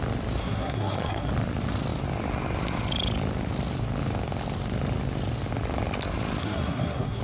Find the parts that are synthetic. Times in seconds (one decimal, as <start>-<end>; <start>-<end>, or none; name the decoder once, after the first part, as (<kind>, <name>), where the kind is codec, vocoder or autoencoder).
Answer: 0.4-1.3 (codec, SNAC); 6.4-7.2